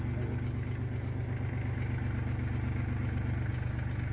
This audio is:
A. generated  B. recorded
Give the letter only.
B